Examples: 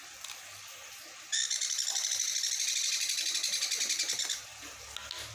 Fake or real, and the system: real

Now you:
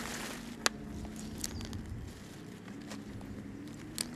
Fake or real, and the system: real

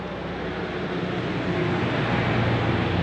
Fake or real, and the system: real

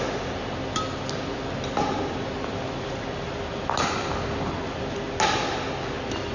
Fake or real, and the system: real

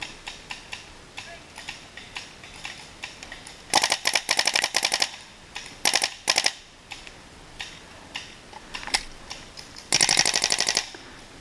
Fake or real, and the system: real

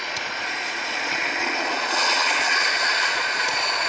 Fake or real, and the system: fake, vocoder, Vocos